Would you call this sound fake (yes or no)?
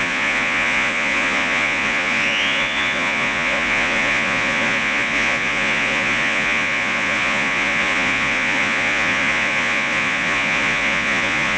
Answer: yes